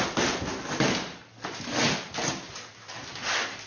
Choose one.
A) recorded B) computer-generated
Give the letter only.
A